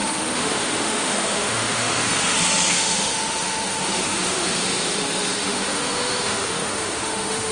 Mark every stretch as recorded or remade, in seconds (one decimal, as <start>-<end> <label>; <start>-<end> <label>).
0.0-2.1 remade; 2.1-2.7 recorded; 2.7-7.5 remade